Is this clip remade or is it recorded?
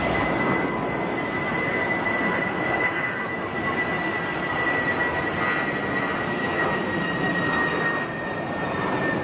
remade